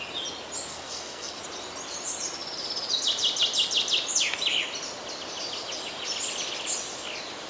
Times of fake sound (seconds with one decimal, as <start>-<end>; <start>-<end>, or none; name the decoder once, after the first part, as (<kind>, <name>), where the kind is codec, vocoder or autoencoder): 0.7-1.4 (codec, SNAC)